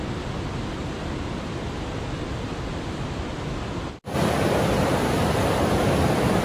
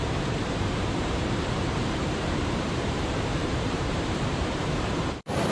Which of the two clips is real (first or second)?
first